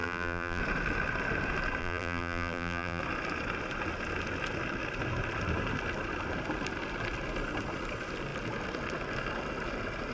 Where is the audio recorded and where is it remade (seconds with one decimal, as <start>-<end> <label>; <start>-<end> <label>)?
0.0-0.6 remade; 0.6-1.8 recorded; 1.8-3.0 remade; 3.0-10.1 recorded